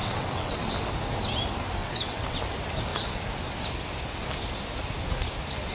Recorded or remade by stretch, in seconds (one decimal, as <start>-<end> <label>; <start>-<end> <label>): 0.0-0.7 remade; 0.7-1.8 recorded; 1.8-2.4 remade; 2.4-5.7 recorded

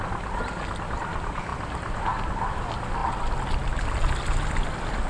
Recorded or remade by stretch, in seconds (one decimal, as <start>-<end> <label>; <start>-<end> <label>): 0.0-5.1 recorded

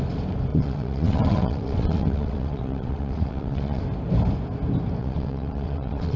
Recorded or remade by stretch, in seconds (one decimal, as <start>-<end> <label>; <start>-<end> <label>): 0.0-0.5 recorded; 0.5-3.8 remade; 3.8-5.0 recorded; 5.0-6.2 remade

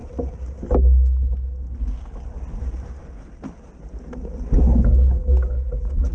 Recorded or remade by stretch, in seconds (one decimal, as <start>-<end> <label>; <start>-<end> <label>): 0.0-6.1 recorded

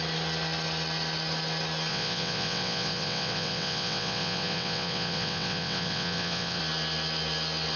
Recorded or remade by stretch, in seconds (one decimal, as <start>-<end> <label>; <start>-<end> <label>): 0.0-1.9 recorded; 1.9-6.6 remade; 6.6-7.8 recorded

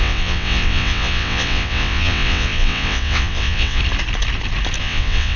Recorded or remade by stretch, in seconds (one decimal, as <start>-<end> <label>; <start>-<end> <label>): 0.0-3.8 remade; 3.8-4.8 recorded; 4.8-5.4 remade